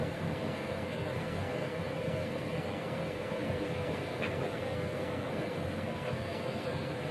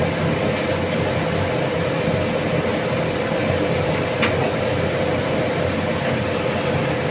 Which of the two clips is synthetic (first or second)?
first